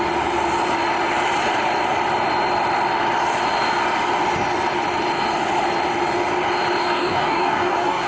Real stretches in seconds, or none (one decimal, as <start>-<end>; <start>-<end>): 0.0-6.8